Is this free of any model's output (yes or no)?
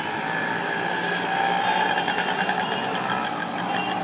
yes